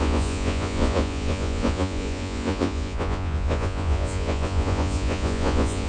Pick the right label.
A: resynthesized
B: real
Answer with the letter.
A